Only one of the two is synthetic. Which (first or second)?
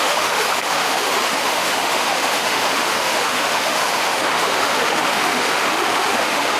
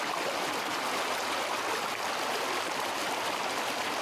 first